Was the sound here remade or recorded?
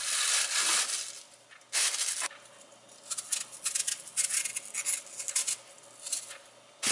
recorded